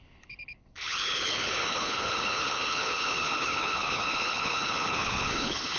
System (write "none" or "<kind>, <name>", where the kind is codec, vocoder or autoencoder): codec, HILCodec